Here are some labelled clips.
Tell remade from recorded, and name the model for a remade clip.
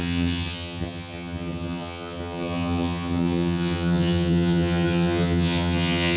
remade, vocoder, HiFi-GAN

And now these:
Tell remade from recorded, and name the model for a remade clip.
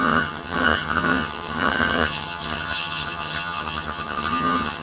remade, vocoder, HiFi-GAN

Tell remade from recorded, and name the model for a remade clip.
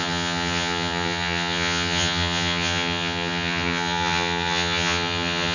remade, vocoder, HiFi-GAN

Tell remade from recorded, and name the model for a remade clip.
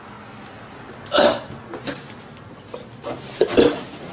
recorded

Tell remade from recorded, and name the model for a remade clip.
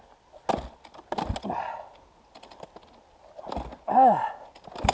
recorded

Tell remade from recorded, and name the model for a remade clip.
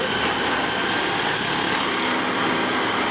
recorded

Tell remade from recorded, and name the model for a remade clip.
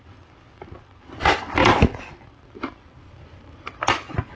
recorded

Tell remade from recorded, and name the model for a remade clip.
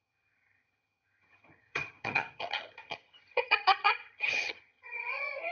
remade, vocoder, HiFi-GAN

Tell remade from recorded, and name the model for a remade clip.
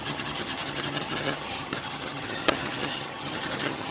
remade, vocoder, HiFi-GAN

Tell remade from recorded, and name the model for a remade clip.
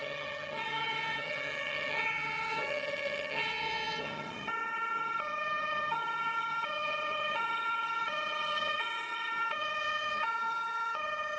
remade, vocoder, HiFi-GAN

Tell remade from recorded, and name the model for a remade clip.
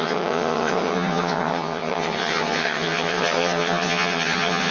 remade, vocoder, HiFi-GAN